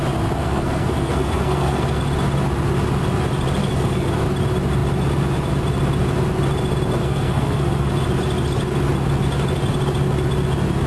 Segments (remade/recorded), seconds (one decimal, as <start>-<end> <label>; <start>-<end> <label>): 0.0-0.4 recorded; 0.4-2.0 remade; 2.0-3.6 recorded; 3.6-4.1 remade; 4.1-7.0 recorded; 7.0-7.9 remade; 7.9-10.9 recorded